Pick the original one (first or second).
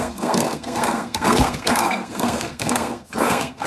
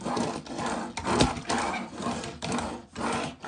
second